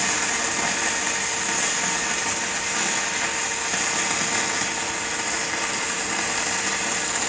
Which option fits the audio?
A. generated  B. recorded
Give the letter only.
B